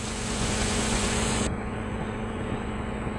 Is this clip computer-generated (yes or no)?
yes